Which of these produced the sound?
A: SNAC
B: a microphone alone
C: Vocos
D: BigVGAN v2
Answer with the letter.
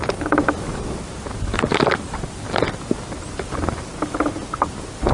B